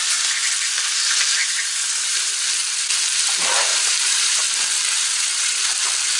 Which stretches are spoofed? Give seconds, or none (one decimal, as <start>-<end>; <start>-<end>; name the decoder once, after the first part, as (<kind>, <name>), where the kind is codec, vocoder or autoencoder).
1.4-2.3 (vocoder, BigVGAN v2); 3.7-4.4; 5.1-5.7